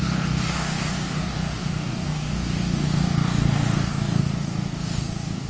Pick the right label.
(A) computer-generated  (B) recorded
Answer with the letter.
A